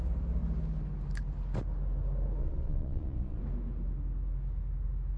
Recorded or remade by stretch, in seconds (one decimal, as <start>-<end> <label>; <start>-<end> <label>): 0.0-2.4 recorded; 2.4-3.4 remade; 3.4-5.2 recorded